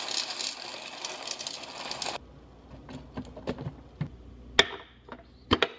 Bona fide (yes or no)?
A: yes